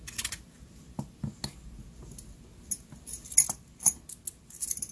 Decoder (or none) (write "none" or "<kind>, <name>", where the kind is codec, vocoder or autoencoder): none